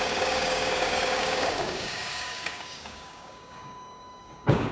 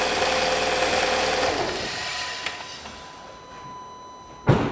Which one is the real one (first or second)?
second